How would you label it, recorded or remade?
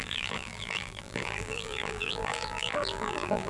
remade